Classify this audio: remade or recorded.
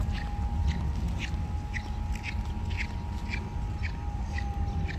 recorded